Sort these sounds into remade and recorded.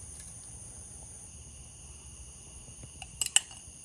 recorded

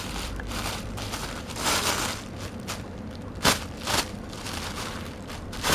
remade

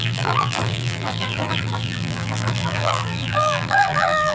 remade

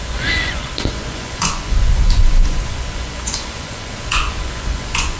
remade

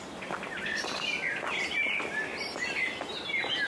recorded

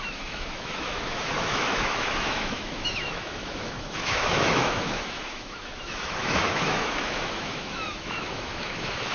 remade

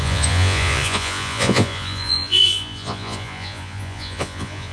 remade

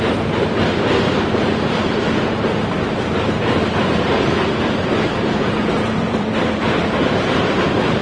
remade